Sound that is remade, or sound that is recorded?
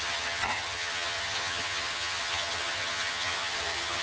remade